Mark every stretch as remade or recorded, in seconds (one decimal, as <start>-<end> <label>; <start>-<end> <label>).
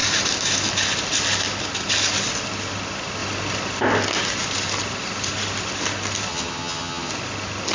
0.0-6.3 recorded; 6.3-7.1 remade; 7.1-7.7 recorded